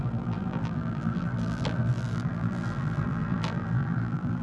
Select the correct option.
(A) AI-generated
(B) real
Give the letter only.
A